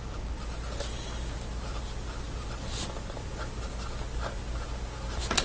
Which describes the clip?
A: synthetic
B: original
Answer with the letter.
B